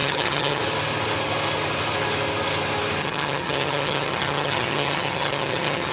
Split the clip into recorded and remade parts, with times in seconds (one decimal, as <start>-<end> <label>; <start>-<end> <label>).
0.0-0.6 remade; 0.6-3.0 recorded; 3.0-5.9 remade